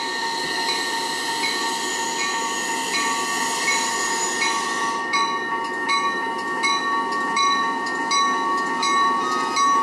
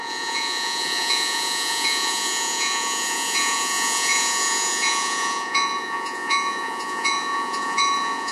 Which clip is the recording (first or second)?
first